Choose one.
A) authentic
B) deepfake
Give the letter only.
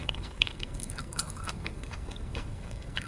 B